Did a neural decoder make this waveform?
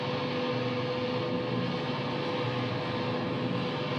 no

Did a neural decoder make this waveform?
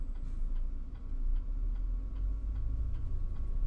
no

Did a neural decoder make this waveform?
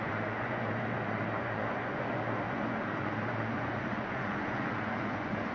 yes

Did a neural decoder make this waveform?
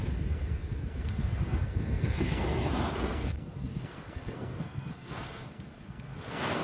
yes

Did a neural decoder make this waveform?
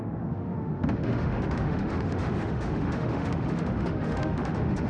yes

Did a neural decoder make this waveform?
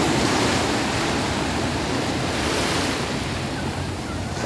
no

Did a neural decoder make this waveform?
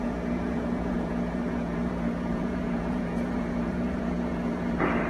yes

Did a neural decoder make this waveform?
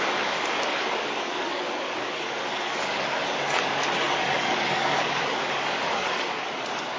yes